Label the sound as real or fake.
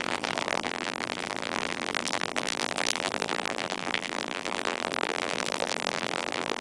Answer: fake